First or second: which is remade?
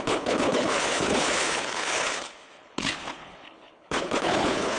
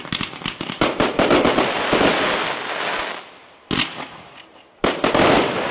first